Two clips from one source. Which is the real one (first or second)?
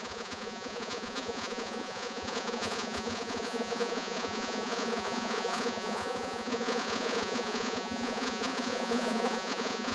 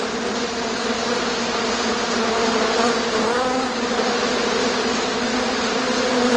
second